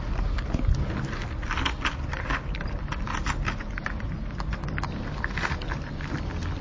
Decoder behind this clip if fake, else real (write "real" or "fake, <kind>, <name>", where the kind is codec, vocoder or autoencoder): real